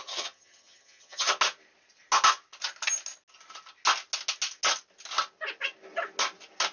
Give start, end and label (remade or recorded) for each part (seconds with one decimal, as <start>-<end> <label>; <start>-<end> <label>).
0.0-1.3 remade; 1.3-6.7 recorded